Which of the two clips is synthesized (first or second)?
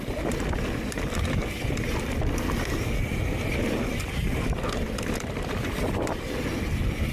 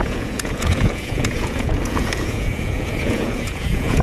second